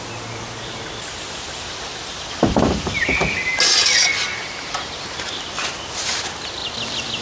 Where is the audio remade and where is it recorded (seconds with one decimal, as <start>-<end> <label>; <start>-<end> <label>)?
0.0-7.2 recorded